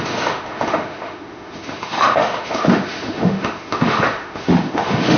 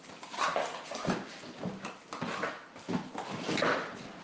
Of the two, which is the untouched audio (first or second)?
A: second